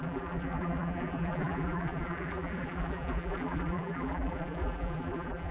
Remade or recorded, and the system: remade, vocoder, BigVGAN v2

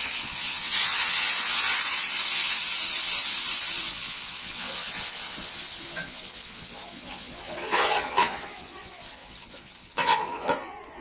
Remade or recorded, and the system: remade, vocoder, Vocos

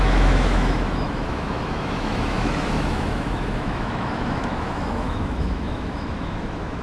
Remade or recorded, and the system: remade, autoencoder, DAC-VAE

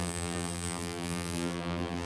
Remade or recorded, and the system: remade, vocoder, BigVGAN v2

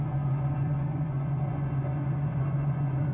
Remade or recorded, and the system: remade, vocoder, Vocos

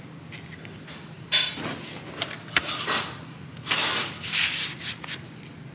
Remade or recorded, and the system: recorded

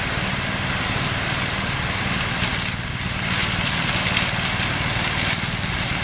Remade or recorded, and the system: recorded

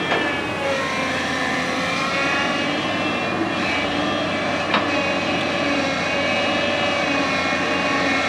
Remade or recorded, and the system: recorded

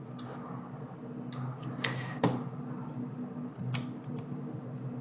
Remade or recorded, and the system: recorded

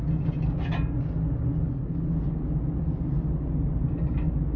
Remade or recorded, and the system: recorded